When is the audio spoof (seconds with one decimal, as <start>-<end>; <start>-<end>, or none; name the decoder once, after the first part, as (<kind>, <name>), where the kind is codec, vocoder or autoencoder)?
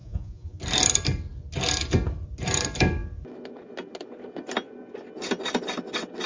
0.0-0.6 (vocoder, Vocos)